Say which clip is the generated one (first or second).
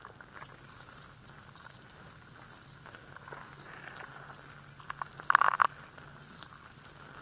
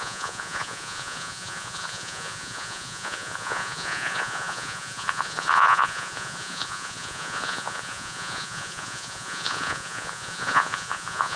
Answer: second